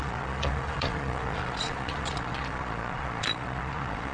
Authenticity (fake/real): fake